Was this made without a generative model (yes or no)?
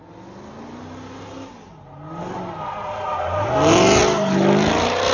yes